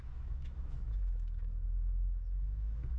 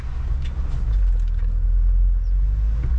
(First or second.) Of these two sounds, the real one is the second